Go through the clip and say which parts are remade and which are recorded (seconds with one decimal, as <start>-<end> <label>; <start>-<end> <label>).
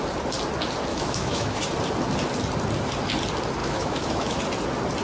0.0-0.9 recorded; 0.9-1.6 remade; 1.6-3.6 recorded; 3.6-4.4 remade; 4.4-5.0 recorded